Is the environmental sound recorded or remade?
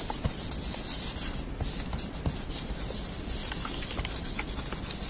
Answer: recorded